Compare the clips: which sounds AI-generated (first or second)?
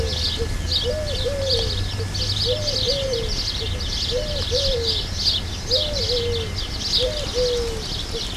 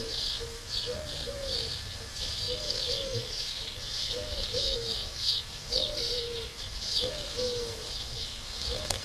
second